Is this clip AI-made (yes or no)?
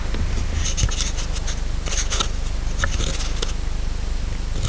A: no